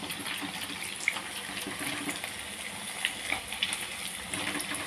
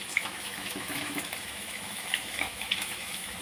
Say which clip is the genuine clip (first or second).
first